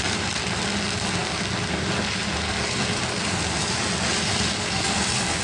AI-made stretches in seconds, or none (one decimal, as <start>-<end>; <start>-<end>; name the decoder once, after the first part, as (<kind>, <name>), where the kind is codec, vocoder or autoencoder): none

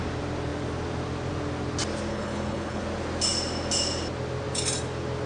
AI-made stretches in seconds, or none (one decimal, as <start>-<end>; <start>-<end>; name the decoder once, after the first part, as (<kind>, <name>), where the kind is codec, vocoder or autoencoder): 2.1-2.8 (codec, HILCodec)

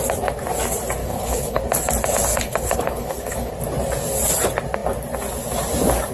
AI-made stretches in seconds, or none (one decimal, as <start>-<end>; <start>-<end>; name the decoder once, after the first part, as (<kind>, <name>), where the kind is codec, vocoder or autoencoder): 1.0-1.6 (codec, HILCodec); 2.3-3.5

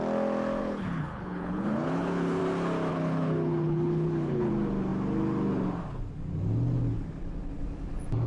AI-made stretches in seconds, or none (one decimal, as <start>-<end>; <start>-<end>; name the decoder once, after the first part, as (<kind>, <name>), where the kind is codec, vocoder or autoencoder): 0.6-2.4 (codec, HILCodec); 2.9-4.5

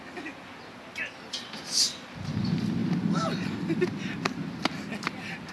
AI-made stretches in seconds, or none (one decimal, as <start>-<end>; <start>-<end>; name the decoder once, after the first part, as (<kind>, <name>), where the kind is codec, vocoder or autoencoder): none

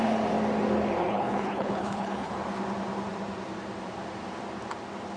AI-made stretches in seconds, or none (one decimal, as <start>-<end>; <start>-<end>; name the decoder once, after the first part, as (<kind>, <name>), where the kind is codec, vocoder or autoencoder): 1.0-2.3 (codec, HILCodec)